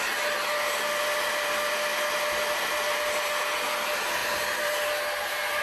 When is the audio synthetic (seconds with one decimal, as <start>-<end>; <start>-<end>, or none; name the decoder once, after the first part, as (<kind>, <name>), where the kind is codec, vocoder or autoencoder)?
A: none